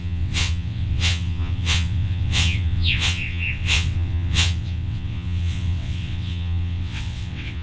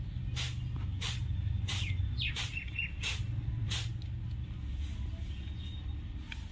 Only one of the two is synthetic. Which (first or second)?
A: first